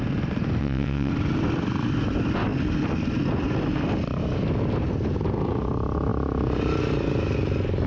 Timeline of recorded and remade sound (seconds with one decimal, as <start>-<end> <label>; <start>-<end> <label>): 0.0-0.6 recorded; 0.6-1.1 remade; 1.1-7.9 recorded